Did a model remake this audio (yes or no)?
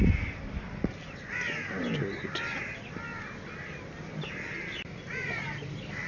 no